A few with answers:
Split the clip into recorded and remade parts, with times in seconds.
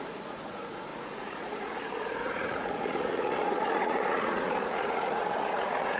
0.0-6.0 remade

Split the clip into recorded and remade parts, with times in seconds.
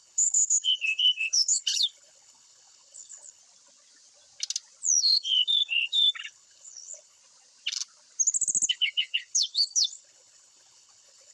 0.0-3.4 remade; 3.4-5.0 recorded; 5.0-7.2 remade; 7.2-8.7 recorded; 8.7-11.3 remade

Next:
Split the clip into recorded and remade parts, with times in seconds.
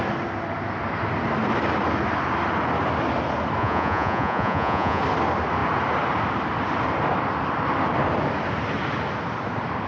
0.0-3.6 recorded; 3.6-5.0 remade; 5.0-9.9 recorded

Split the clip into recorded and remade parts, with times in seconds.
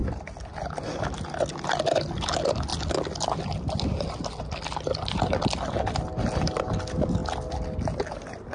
0.0-8.5 recorded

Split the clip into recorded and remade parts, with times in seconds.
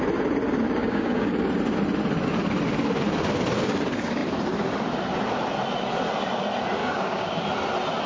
0.0-0.8 recorded; 0.8-1.5 remade; 1.5-6.8 recorded; 6.8-7.4 remade; 7.4-8.1 recorded